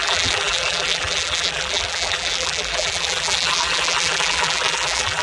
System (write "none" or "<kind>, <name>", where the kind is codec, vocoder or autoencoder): vocoder, BigVGAN v2